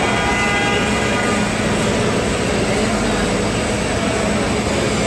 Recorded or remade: recorded